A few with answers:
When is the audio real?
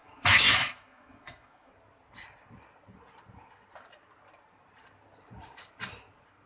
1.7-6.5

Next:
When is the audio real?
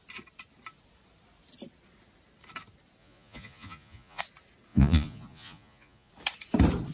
0.0-3.0; 4.2-4.7; 6.1-6.9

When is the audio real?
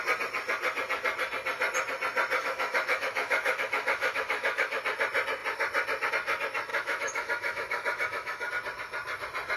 0.0-2.4; 4.8-6.7; 8.5-9.6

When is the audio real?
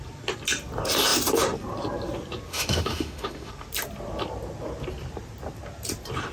0.0-2.5; 3.5-6.3